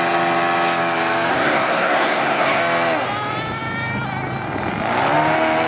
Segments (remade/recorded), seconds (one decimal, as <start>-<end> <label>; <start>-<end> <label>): 0.0-1.3 recorded; 1.3-2.6 remade; 2.6-5.7 recorded